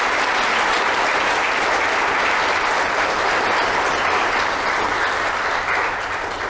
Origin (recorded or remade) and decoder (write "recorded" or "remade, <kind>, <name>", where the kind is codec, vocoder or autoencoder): recorded